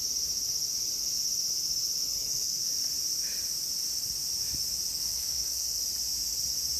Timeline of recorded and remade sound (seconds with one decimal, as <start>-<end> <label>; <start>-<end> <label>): 0.0-2.2 recorded; 2.2-2.7 remade; 2.7-4.9 recorded; 4.9-5.8 remade; 5.8-6.8 recorded